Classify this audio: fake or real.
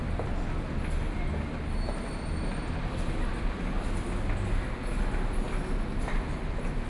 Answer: real